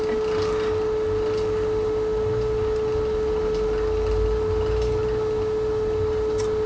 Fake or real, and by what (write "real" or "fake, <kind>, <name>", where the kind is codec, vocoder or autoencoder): real